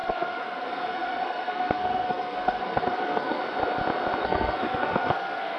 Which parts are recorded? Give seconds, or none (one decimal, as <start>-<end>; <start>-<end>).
3.4-4.2